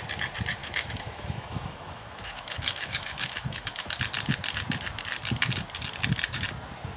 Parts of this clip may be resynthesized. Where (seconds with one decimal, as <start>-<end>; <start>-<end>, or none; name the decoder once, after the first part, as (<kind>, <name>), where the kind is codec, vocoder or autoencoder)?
0.6-4.0 (autoencoder, DAC-VAE)